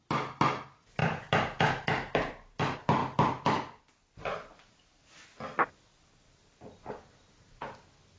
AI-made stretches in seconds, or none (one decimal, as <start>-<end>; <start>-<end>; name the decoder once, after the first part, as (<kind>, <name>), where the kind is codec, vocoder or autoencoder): 1.0-2.6 (vocoder, BigVGAN v2); 3.0-3.8

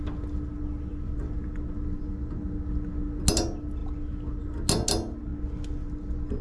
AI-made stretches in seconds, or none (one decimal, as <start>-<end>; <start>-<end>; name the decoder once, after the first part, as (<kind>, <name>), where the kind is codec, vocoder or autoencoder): none

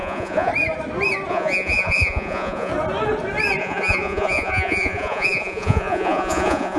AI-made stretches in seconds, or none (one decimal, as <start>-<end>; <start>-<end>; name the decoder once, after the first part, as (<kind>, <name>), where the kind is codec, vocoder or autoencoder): 0.0-0.5 (vocoder, Vocos); 1.3-2.7; 3.6-6.8

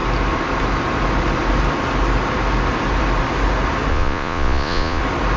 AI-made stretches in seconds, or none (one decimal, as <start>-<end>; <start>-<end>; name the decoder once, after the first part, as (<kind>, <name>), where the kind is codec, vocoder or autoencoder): 3.9-5.0 (vocoder, Vocos)

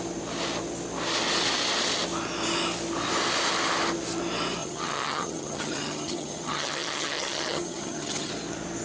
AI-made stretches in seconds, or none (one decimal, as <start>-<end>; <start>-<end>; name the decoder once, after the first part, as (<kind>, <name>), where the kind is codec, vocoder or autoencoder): 4.6-8.3 (vocoder, HiFi-GAN)